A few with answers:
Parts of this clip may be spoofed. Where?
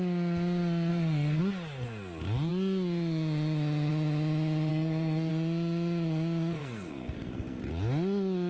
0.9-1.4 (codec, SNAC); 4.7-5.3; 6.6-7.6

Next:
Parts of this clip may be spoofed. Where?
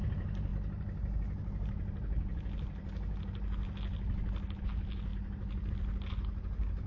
none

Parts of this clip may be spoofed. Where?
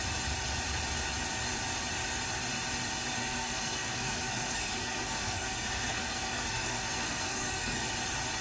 3.2-7.9 (codec, SNAC)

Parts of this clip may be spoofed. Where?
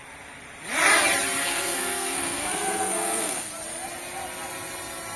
1.4-3.5 (codec, SNAC)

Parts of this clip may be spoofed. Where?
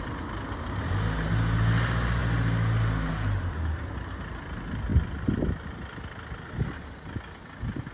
none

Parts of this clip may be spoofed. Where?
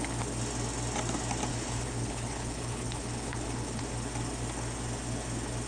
1.5-3.8 (codec, HILCodec)